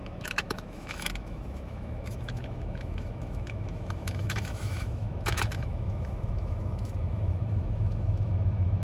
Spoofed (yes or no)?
yes